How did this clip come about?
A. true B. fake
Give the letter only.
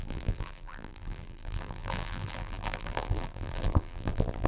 B